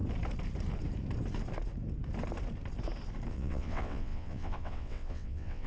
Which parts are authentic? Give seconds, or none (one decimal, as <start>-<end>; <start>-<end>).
0.0-3.3